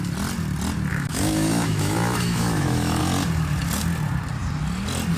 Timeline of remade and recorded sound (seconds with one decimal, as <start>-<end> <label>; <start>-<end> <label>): 0.0-0.9 recorded; 0.9-3.0 remade; 3.0-5.2 recorded